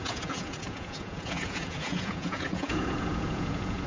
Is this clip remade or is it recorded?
remade